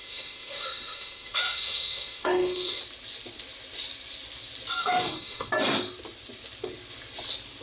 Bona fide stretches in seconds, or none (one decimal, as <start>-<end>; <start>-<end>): 2.8-4.8; 5.5-7.6